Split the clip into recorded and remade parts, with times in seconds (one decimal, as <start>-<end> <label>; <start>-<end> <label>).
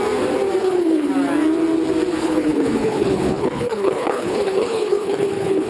0.0-0.6 recorded; 0.6-1.1 remade; 1.1-2.2 recorded; 2.2-5.7 remade